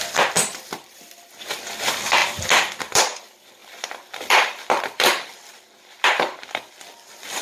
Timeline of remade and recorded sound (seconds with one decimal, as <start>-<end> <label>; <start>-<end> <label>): 0.0-2.2 remade; 2.2-2.8 recorded; 2.8-7.4 remade